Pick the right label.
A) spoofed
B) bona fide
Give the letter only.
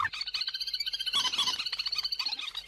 B